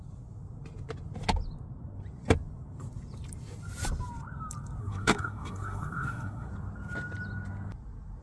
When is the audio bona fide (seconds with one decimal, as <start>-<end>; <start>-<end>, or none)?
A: 0.0-4.8; 6.5-8.2